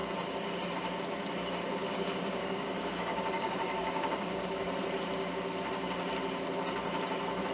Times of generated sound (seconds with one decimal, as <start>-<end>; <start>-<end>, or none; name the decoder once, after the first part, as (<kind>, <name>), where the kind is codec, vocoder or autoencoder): 1.8-4.7 (codec, DAC)